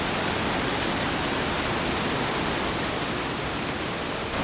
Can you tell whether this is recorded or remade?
recorded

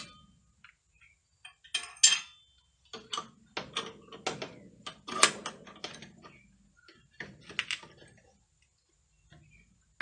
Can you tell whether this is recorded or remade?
recorded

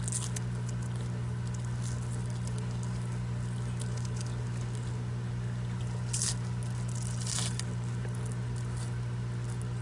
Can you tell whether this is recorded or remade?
recorded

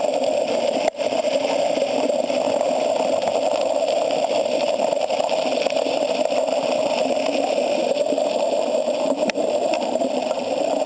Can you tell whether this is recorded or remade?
recorded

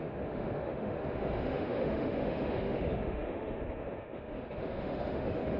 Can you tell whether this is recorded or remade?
remade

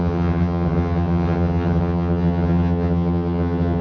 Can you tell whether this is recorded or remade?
remade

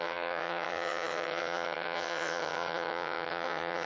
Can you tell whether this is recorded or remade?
remade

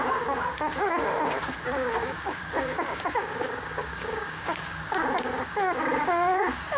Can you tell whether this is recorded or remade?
remade